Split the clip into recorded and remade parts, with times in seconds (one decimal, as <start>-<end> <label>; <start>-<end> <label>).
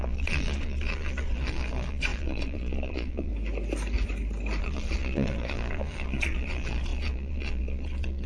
0.0-3.3 remade; 3.3-4.6 recorded; 4.6-8.3 remade